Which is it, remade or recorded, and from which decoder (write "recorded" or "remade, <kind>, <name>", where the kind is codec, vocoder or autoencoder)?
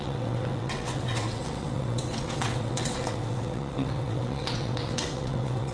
remade, vocoder, WaveNeXt